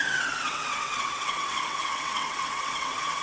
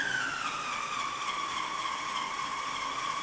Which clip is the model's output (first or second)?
first